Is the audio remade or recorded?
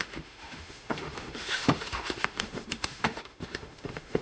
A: remade